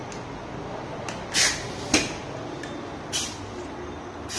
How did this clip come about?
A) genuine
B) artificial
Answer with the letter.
A